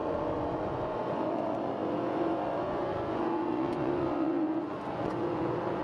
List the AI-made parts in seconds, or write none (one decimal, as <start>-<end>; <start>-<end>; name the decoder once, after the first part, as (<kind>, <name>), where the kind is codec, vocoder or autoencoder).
0.0-5.8 (vocoder, Vocos)